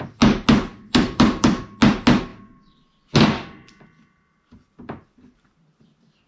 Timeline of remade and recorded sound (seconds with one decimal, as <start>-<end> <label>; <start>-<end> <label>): 0.0-0.7 recorded; 0.7-1.6 remade; 1.6-6.3 recorded